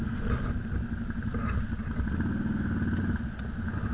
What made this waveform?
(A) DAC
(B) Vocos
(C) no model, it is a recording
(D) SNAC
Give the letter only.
C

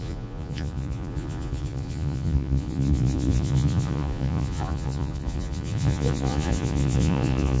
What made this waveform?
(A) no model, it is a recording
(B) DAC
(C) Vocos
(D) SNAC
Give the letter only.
C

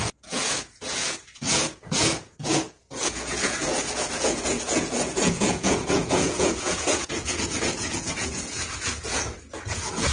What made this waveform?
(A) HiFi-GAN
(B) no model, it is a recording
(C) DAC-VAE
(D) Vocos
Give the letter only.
D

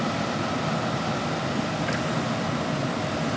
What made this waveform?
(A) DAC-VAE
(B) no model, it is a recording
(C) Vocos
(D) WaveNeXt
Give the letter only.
B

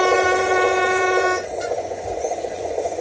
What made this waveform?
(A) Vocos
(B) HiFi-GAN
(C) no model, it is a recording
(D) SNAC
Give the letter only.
A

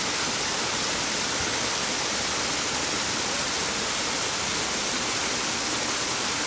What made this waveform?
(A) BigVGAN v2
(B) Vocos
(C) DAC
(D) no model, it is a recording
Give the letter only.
D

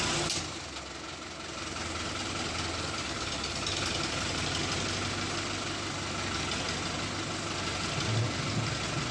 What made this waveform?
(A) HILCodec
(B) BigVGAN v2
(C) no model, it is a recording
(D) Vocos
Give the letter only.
C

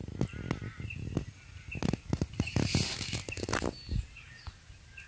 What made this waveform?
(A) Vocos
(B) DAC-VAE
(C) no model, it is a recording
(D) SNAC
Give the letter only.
C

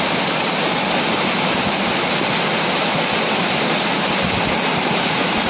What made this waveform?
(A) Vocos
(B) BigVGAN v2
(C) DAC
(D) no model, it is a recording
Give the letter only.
D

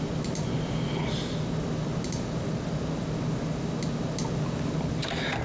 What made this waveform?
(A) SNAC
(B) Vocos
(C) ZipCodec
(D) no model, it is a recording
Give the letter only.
D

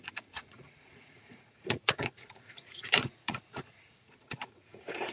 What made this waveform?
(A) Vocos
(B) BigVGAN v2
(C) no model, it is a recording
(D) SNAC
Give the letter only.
A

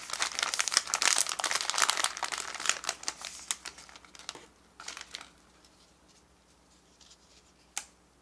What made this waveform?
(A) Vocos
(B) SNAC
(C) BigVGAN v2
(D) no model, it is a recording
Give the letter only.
D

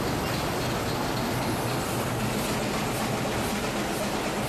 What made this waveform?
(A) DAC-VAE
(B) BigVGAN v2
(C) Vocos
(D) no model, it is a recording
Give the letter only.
D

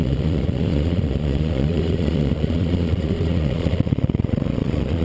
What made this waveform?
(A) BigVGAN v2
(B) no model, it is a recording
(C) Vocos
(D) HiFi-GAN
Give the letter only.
C